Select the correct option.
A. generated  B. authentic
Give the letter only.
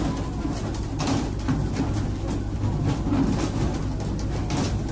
B